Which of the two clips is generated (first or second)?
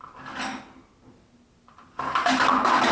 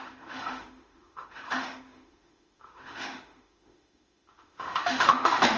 second